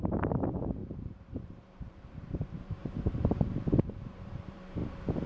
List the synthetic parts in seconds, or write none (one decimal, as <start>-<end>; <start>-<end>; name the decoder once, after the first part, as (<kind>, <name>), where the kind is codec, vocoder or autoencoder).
0.0-4.8 (vocoder, BigVGAN v2)